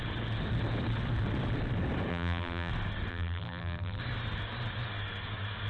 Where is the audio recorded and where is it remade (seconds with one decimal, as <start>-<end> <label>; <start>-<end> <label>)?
0.0-2.1 recorded; 2.1-2.7 remade; 2.7-3.1 recorded; 3.1-4.0 remade; 4.0-5.7 recorded